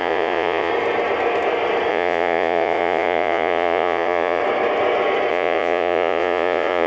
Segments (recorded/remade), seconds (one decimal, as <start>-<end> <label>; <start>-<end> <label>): 0.0-0.7 remade; 0.7-1.9 recorded; 1.9-4.4 remade; 4.4-5.3 recorded; 5.3-6.9 remade